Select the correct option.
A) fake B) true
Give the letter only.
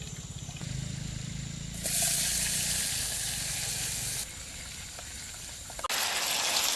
B